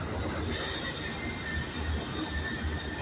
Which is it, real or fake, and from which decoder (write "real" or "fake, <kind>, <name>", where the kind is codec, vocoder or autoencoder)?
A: real